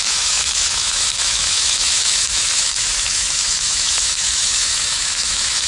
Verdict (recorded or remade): remade